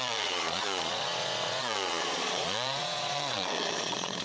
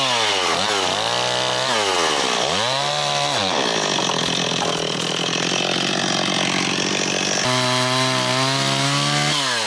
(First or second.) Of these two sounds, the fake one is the first